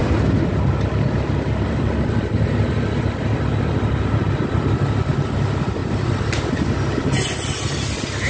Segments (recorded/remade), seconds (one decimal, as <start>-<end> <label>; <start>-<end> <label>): 0.0-5.8 recorded; 5.8-6.5 remade; 6.5-8.3 recorded